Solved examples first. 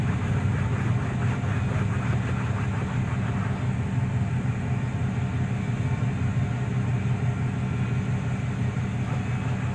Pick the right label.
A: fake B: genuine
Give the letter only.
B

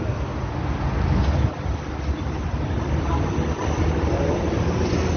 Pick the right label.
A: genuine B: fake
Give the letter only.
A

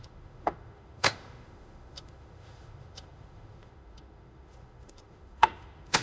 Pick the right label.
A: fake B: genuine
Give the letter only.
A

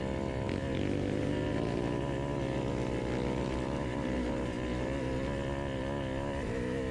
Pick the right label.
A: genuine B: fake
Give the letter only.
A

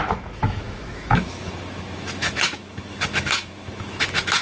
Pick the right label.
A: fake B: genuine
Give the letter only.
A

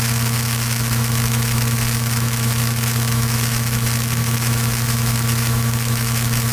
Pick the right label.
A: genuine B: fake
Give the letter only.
B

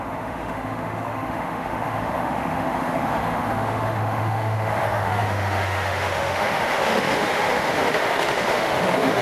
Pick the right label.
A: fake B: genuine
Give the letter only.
A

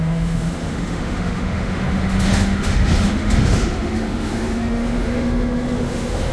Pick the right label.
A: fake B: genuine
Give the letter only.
A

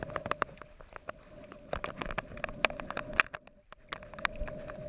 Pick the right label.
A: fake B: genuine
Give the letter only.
B